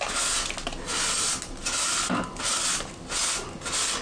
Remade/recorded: recorded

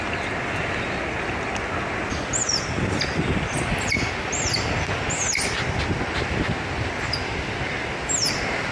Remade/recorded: recorded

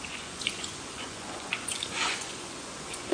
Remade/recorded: remade